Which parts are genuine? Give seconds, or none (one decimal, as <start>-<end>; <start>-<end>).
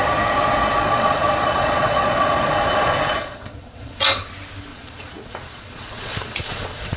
0.0-0.8; 4.0-4.7